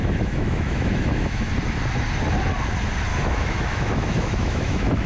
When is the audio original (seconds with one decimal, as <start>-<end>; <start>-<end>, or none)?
1.5-3.1